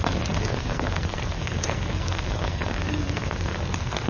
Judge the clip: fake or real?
fake